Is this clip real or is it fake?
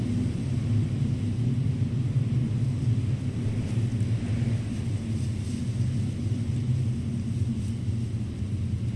real